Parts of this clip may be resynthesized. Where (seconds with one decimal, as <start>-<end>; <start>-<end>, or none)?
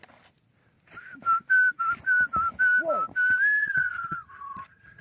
3.6-5.0